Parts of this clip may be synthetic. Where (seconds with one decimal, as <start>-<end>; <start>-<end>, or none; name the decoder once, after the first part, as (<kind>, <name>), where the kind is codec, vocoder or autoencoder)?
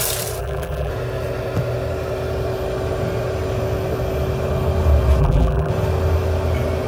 0.4-0.9 (vocoder, BigVGAN v2); 5.2-5.7